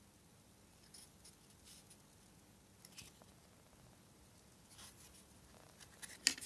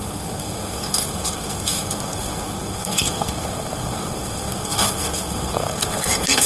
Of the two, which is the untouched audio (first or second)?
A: first